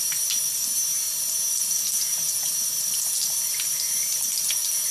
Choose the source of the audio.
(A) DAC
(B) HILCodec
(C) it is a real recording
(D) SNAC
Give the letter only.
C